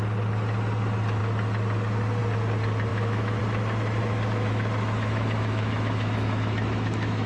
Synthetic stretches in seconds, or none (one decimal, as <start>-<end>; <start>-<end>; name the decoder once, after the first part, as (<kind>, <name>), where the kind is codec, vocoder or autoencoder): 2.9-3.4 (autoencoder, DAC-VAE); 4.0-7.3